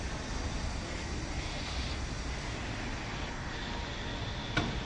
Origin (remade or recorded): recorded